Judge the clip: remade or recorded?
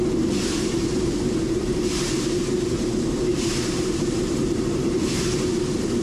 remade